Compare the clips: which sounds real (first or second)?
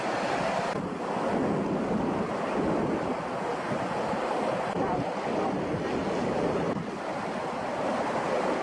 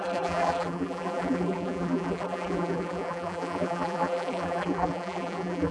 first